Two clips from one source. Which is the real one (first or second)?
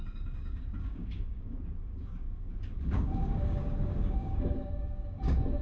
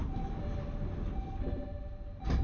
second